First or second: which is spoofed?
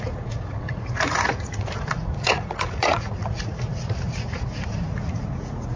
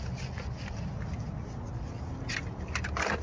first